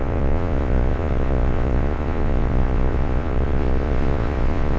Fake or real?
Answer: fake